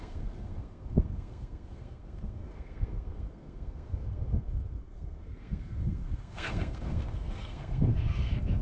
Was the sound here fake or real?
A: fake